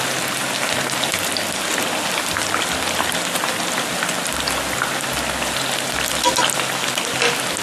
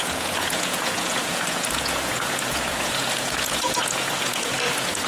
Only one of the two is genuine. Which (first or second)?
first